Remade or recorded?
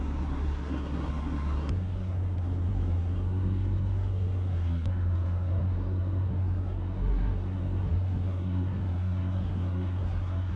remade